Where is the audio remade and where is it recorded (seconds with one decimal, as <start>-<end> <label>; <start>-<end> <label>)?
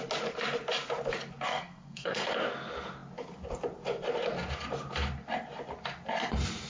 0.0-1.5 recorded; 1.5-2.2 remade; 2.2-6.7 recorded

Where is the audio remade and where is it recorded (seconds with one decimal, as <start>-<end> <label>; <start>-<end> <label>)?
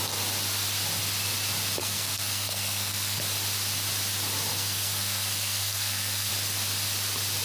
0.0-1.8 recorded; 1.8-3.2 remade; 3.2-4.5 recorded; 4.5-6.3 remade; 6.3-7.4 recorded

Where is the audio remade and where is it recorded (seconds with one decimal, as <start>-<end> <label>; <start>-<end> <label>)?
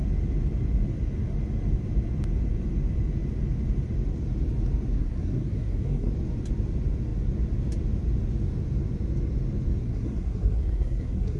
0.0-5.0 recorded; 5.0-6.1 remade; 6.1-9.8 recorded; 9.8-11.4 remade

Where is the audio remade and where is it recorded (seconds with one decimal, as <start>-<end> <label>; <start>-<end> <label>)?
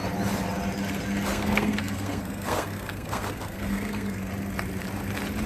0.0-1.3 recorded; 1.3-4.3 remade; 4.3-5.5 recorded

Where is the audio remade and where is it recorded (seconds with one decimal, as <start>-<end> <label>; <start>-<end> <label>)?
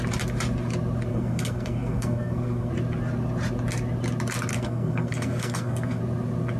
0.0-1.1 recorded; 1.1-2.7 remade; 2.7-4.5 recorded; 4.5-6.0 remade; 6.0-6.6 recorded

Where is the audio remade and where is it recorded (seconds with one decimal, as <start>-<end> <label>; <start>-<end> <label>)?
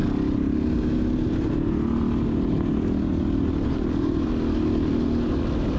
0.0-5.8 recorded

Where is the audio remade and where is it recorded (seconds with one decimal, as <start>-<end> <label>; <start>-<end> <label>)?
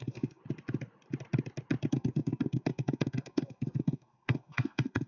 0.0-0.4 remade; 0.4-1.9 recorded; 1.9-5.1 remade